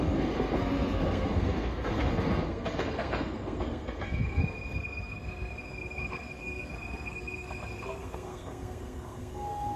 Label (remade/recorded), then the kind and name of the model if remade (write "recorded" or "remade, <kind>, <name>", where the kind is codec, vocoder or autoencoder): remade, codec, SNAC